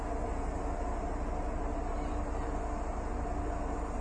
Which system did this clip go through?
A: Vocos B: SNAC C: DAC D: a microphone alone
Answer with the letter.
D